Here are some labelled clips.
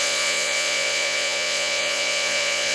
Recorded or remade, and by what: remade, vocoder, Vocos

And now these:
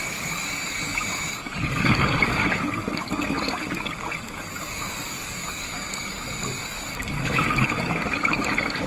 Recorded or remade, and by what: remade, codec, DAC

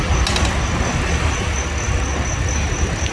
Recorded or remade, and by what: recorded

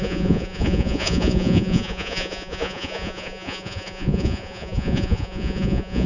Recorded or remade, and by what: remade, vocoder, Vocos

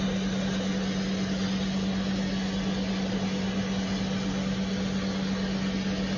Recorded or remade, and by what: recorded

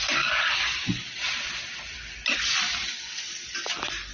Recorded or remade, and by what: recorded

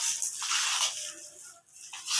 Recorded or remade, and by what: recorded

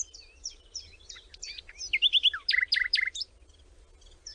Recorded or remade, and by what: recorded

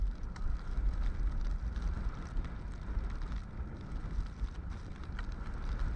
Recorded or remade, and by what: recorded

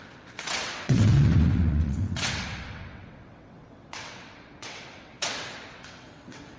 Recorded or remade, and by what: remade, vocoder, WaveNeXt